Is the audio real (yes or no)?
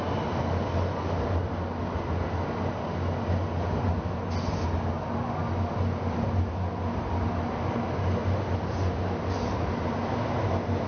yes